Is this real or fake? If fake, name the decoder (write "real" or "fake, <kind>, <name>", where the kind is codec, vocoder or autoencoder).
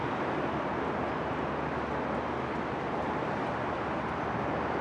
real